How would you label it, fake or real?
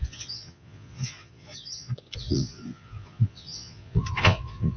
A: fake